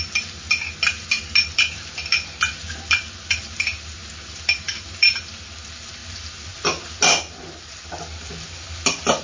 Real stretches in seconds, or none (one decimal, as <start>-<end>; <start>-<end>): 0.0-9.2